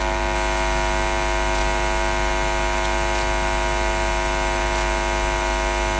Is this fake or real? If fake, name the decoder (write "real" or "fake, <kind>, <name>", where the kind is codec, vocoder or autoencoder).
real